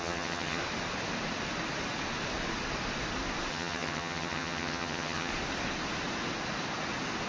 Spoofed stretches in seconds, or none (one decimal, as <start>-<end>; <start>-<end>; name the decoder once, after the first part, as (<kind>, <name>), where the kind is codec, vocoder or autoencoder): 0.0-0.6 (vocoder, HiFi-GAN); 3.5-5.3